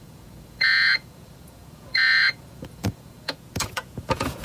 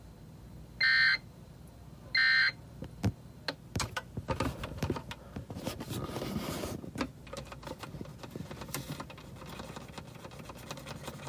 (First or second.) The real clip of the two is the second